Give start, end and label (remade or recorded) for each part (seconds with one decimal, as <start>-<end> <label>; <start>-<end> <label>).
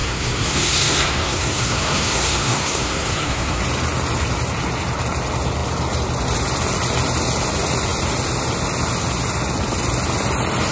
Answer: 0.0-3.6 remade; 3.6-10.7 recorded